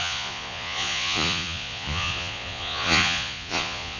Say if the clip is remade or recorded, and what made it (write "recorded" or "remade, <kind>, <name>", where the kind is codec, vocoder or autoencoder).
remade, vocoder, Vocos